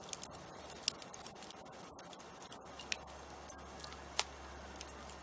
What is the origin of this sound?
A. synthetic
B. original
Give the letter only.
B